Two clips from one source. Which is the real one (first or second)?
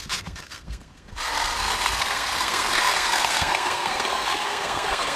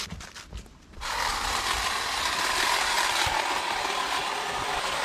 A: second